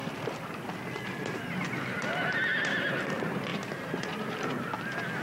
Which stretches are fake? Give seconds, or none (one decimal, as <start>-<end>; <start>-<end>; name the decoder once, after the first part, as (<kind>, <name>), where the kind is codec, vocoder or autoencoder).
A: none